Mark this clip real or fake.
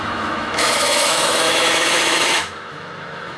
fake